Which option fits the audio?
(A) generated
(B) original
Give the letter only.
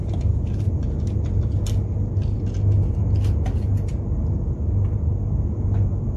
B